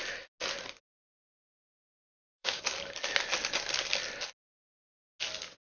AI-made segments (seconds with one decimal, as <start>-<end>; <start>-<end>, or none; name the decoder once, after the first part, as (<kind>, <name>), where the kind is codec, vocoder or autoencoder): 1.0-2.6 (codec, DAC)